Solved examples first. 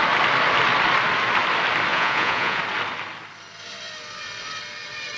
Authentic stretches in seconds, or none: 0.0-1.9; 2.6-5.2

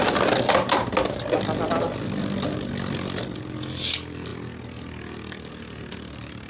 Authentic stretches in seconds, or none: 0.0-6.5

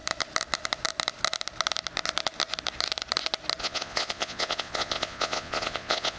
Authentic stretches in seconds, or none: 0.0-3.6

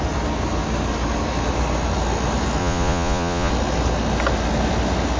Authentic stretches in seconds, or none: 0.0-2.6; 3.5-5.2

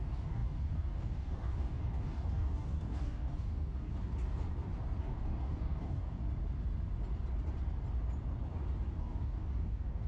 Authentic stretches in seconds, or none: 3.9-5.0; 6.2-9.0

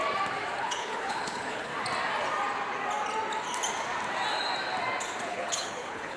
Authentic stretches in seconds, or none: 0.0-0.6; 1.7-5.3